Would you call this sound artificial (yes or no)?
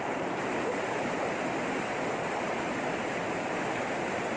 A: no